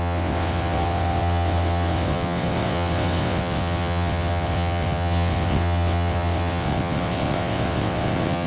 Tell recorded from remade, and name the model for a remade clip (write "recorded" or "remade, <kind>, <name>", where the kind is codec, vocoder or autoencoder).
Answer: remade, vocoder, WaveNeXt